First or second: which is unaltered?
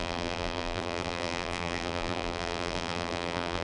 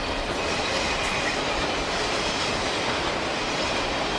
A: second